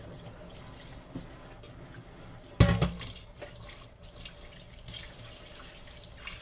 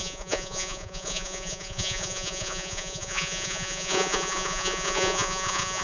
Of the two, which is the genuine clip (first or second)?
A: first